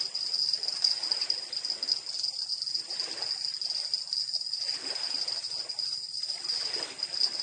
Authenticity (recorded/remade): recorded